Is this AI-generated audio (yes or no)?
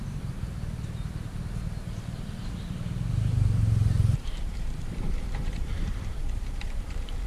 yes